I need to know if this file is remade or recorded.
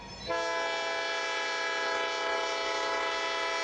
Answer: recorded